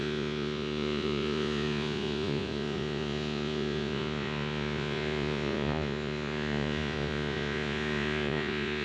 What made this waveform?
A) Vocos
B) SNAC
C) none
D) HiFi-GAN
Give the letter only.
A